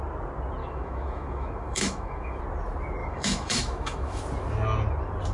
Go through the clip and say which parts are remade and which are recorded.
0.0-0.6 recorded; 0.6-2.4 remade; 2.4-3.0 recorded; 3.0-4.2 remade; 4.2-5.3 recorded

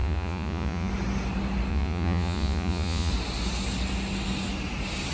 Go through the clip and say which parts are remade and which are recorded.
0.0-0.9 remade; 0.9-1.7 recorded; 1.7-3.1 remade; 3.1-5.1 recorded

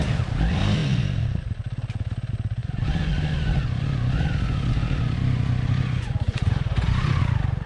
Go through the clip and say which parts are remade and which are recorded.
0.0-2.6 recorded; 2.6-7.2 remade; 7.2-7.7 recorded